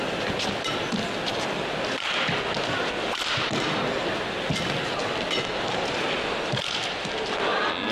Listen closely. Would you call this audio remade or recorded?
recorded